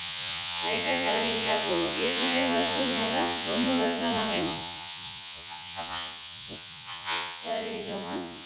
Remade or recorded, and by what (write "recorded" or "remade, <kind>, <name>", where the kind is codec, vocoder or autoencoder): remade, vocoder, Vocos